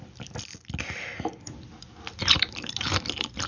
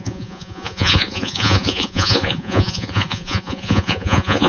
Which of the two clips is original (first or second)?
first